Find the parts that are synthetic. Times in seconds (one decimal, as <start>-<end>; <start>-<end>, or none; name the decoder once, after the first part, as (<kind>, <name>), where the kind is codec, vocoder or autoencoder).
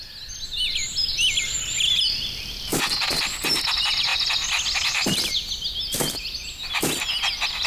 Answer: none